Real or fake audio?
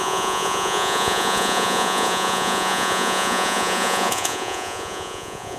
fake